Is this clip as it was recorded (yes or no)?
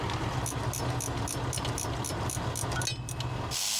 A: yes